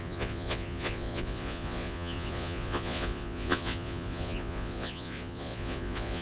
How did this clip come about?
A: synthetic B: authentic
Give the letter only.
A